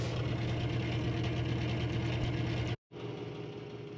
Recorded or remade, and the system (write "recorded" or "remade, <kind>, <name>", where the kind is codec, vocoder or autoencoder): recorded